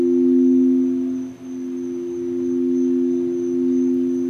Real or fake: real